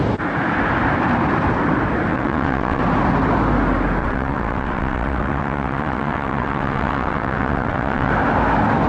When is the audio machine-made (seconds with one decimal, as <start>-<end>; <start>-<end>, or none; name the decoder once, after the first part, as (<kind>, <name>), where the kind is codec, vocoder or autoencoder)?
2.1-2.8 (vocoder, WaveNeXt); 4.0-8.1